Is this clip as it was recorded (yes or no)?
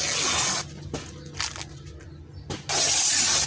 yes